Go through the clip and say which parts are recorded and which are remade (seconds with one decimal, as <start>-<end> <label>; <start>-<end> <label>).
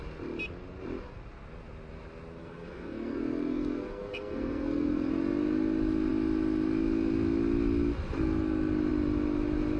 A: 0.0-2.4 recorded; 2.4-5.1 remade; 5.1-9.8 recorded